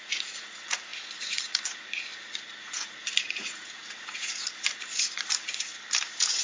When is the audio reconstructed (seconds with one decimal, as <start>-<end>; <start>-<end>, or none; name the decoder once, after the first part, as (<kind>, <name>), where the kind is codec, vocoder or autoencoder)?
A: 0.0-2.1 (vocoder, Vocos); 2.6-5.7

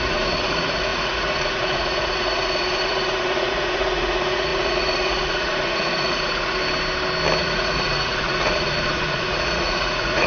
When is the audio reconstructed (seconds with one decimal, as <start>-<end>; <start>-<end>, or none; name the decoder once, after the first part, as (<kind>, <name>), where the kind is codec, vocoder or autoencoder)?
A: 0.0-6.6 (vocoder, Vocos); 7.4-10.3

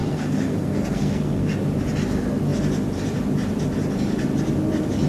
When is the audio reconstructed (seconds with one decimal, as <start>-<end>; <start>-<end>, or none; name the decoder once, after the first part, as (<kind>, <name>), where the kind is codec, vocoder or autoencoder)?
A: 0.0-1.5 (codec, SNAC)

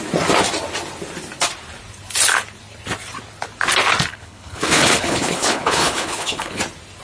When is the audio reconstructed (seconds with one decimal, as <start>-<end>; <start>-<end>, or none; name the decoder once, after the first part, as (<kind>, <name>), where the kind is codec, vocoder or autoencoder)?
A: 4.1-6.6 (codec, HILCodec)

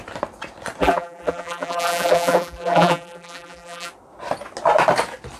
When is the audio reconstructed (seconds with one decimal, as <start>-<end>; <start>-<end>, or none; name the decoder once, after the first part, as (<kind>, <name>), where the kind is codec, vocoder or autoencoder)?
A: 0.8-3.9 (vocoder, BigVGAN v2)